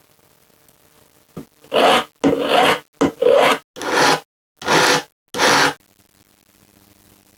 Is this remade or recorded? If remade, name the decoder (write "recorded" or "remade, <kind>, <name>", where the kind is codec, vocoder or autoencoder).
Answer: recorded